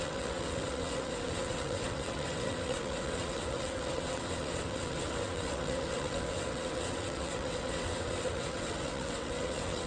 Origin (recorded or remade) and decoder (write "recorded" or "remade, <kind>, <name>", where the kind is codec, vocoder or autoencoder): remade, vocoder, WaveNeXt